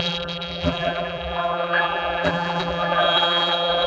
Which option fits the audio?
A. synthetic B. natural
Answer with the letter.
A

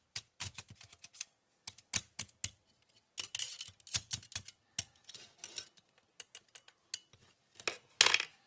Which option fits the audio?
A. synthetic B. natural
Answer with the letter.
B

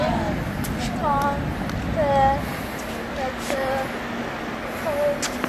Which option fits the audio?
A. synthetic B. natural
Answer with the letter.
B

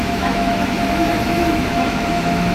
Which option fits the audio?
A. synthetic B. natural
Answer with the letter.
A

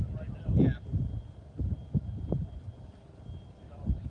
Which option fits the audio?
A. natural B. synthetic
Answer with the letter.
A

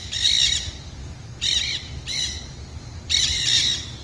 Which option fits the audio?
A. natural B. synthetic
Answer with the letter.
A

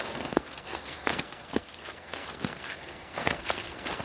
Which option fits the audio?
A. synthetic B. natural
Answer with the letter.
A